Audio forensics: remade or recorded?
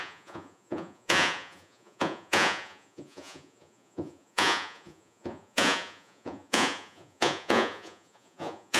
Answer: remade